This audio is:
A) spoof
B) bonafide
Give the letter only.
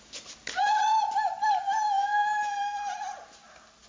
B